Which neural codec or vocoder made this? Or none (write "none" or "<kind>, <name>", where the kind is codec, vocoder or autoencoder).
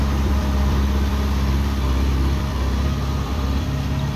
vocoder, BigVGAN v2